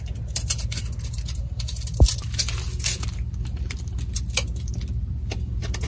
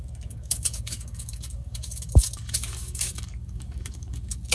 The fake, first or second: second